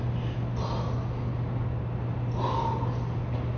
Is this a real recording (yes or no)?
yes